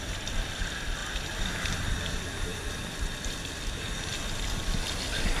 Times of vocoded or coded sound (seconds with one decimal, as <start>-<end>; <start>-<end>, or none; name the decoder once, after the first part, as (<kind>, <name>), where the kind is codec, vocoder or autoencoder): 0.0-1.0 (vocoder, BigVGAN v2); 1.7-5.4